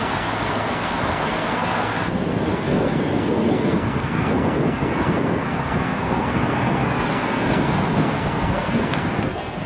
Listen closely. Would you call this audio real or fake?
fake